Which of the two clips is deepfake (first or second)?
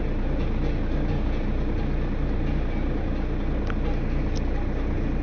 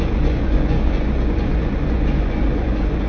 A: second